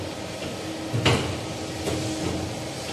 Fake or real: real